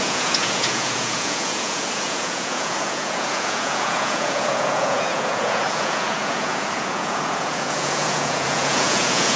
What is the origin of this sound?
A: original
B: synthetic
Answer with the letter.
B